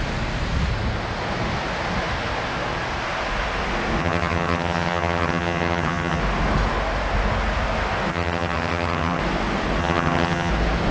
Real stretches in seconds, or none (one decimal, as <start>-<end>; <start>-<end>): 0.0-4.0; 6.2-8.1; 9.2-9.8; 10.5-10.9